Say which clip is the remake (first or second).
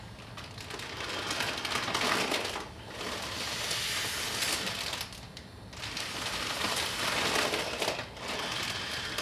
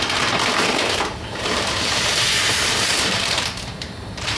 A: second